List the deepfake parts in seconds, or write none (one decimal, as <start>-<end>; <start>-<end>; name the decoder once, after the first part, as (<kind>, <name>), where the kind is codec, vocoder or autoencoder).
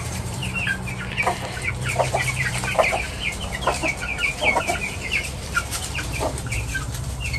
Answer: 0.0-0.4 (vocoder, BigVGAN v2); 1.7-3.8; 4.6-7.4